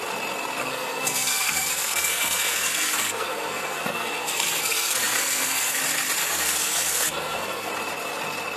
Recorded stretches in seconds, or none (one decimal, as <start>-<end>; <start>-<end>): 0.0-0.6; 5.8-6.2; 7.7-8.6